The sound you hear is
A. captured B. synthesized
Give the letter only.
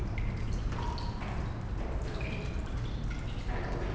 A